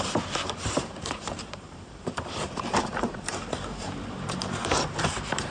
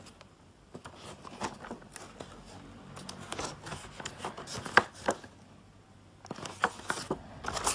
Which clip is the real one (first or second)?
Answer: second